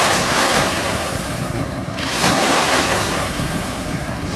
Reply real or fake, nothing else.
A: fake